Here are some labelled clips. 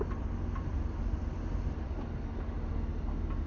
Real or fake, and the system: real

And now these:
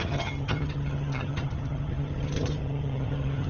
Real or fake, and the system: fake, vocoder, HiFi-GAN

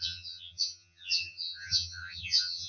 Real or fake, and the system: fake, vocoder, HiFi-GAN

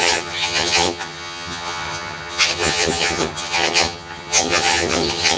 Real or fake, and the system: fake, vocoder, HiFi-GAN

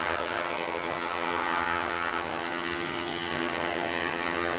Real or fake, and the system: fake, vocoder, HiFi-GAN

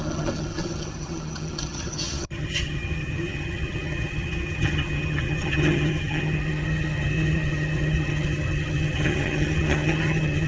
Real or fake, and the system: fake, vocoder, HiFi-GAN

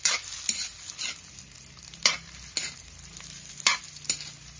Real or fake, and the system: real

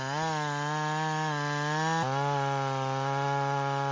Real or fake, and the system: real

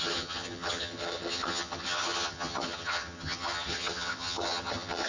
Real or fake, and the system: fake, vocoder, HiFi-GAN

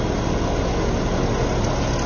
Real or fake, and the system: real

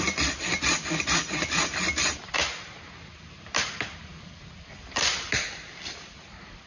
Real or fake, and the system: real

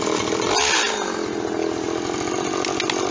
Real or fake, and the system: real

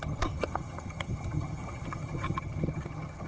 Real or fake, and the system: fake, vocoder, HiFi-GAN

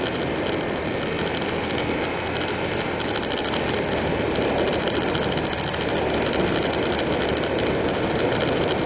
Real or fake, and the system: real